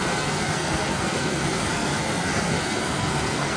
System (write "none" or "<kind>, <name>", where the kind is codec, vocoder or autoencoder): codec, SNAC